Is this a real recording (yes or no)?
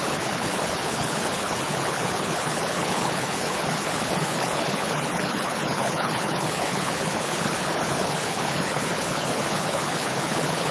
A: no